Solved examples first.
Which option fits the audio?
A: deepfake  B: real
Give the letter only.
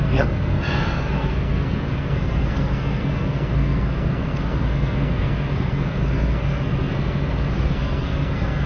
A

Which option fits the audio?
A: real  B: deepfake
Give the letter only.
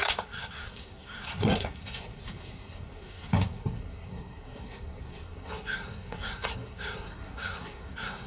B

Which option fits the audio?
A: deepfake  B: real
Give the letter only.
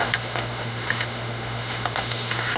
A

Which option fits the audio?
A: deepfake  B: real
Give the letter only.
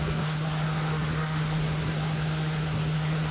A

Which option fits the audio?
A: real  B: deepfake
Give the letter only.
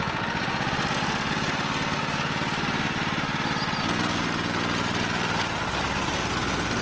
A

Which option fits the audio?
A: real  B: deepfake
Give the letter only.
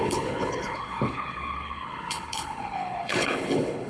B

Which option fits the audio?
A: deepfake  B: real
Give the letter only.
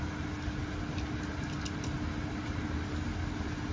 B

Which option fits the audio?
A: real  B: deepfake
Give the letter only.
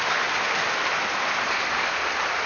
B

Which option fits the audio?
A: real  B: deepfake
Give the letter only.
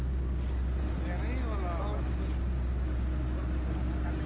A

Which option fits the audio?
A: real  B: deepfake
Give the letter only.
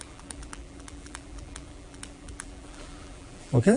B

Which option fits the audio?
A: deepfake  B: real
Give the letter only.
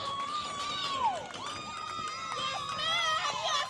B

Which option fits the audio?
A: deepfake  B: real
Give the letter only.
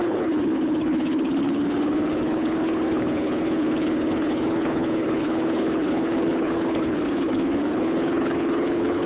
A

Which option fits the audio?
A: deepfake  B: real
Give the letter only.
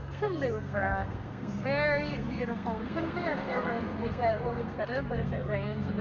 A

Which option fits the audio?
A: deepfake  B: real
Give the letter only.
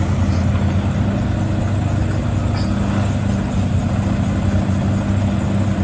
B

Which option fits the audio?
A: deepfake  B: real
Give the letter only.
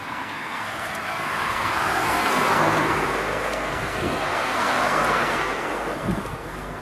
A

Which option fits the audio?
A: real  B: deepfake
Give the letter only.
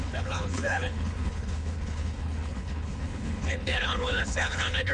B